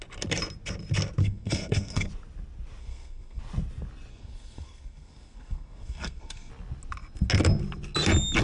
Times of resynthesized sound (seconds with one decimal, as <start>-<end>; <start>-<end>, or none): 1.2-2.1; 2.8-3.4; 4.1-6.5